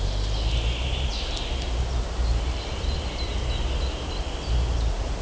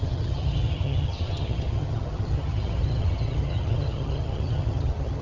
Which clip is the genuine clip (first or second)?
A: first